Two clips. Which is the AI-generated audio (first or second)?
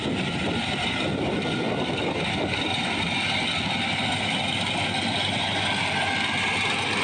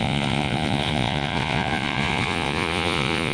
second